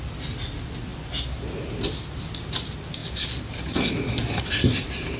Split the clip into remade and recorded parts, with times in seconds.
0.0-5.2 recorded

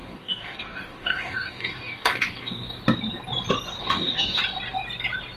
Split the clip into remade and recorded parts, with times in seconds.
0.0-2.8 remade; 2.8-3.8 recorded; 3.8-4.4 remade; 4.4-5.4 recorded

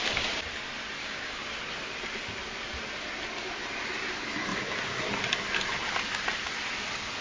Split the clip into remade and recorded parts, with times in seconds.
0.0-1.0 recorded; 1.0-1.5 remade; 1.5-7.2 recorded

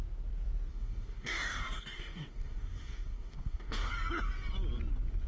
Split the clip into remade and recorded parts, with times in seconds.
0.0-0.7 recorded; 0.7-3.9 remade; 3.9-5.3 recorded

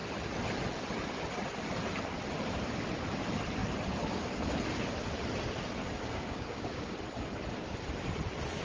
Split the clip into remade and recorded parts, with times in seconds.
0.0-5.8 recorded; 5.8-6.9 remade; 6.9-8.6 recorded

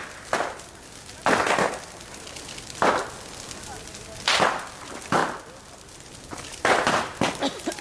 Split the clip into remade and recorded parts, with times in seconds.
0.0-7.8 recorded